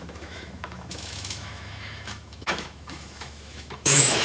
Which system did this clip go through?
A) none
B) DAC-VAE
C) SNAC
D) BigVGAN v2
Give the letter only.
B